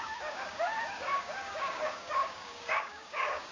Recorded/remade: remade